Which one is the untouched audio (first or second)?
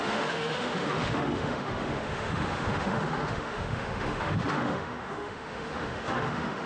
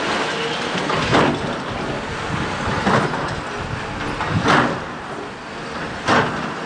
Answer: second